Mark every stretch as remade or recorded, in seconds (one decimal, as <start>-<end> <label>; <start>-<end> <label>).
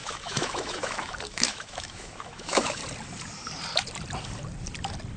0.0-2.8 remade; 2.8-5.2 recorded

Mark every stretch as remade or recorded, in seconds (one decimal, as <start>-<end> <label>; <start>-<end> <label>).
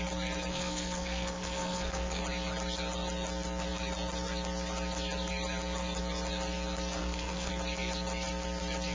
0.0-0.5 recorded; 0.5-2.2 remade; 2.2-7.0 recorded; 7.0-7.5 remade; 7.5-8.9 recorded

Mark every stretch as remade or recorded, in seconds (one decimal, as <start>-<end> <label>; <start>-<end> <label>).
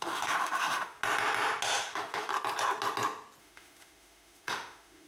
0.0-1.0 remade; 1.0-1.8 recorded; 1.8-2.3 remade; 2.3-3.4 recorded; 3.4-5.1 remade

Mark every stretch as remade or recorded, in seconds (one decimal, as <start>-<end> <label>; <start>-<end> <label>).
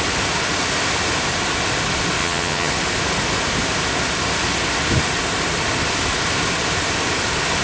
0.0-2.2 recorded; 2.2-2.7 remade; 2.7-7.6 recorded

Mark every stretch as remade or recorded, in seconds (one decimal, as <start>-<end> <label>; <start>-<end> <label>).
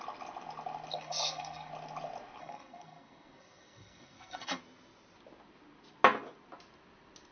0.0-0.9 recorded; 0.9-1.7 remade; 1.7-2.4 recorded; 2.4-4.6 remade; 4.6-7.3 recorded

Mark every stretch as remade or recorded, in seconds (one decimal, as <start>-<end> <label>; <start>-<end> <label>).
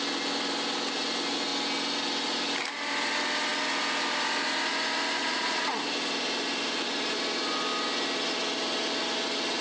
0.0-5.2 recorded; 5.2-5.8 remade; 5.8-9.6 recorded